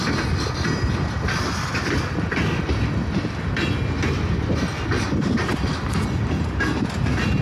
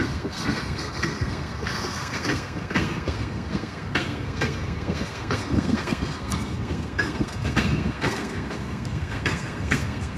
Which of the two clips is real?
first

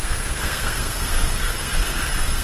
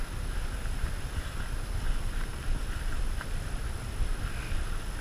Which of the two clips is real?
second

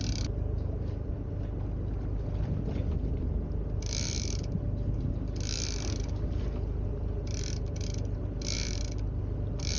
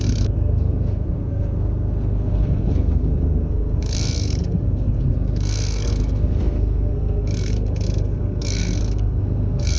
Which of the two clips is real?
first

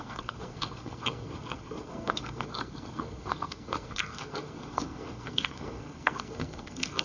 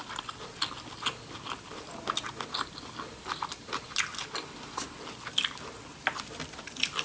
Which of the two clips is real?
second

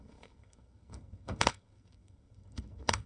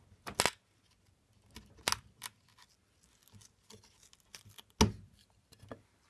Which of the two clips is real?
second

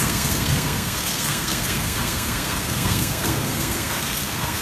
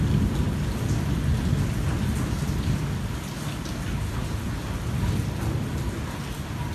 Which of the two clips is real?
second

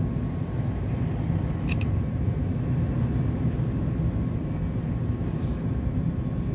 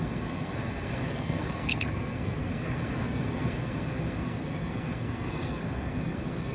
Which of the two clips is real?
first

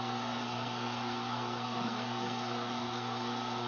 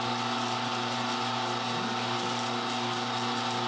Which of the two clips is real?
second